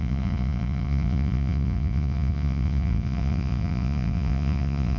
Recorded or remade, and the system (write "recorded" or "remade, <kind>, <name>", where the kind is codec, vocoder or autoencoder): remade, vocoder, Vocos